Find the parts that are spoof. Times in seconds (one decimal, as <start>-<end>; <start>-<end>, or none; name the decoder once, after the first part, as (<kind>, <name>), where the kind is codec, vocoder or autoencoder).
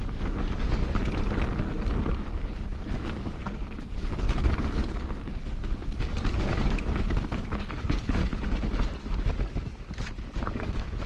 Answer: 0.0-8.2 (codec, DAC); 10.4-11.1